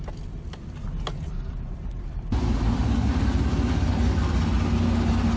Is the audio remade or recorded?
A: recorded